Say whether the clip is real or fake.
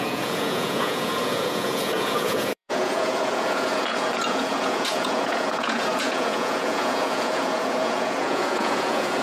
fake